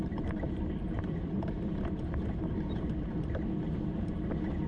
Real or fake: fake